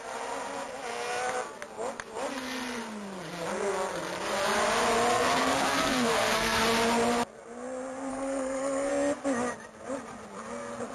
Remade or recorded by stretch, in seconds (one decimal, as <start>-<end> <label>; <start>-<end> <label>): 0.0-5.1 recorded; 5.1-6.6 remade; 6.6-8.1 recorded; 8.1-8.9 remade; 8.9-10.9 recorded